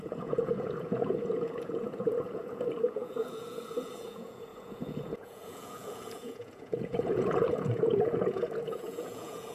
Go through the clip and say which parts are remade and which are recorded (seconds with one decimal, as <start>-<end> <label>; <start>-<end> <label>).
0.0-9.5 remade